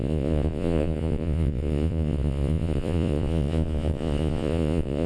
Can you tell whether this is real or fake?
fake